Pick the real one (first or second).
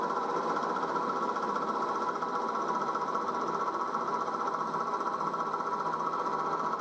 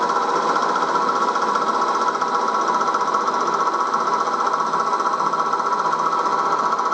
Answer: second